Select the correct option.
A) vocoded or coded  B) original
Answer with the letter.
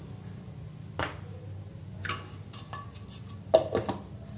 B